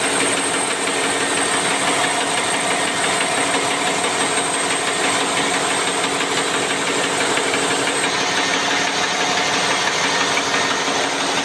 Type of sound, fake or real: real